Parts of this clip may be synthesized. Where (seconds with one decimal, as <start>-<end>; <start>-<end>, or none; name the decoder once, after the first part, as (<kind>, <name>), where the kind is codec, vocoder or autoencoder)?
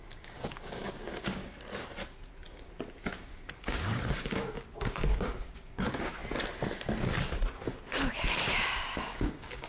0.0-1.4 (codec, DAC); 3.2-6.2; 9.0-9.7